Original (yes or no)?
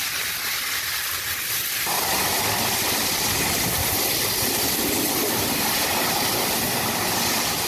yes